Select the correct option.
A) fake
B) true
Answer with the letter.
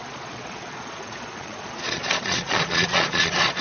A